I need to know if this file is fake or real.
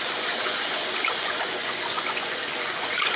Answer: fake